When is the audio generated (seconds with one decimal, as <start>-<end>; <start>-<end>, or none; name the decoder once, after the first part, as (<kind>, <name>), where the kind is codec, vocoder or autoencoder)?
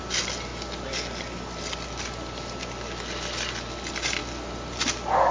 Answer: none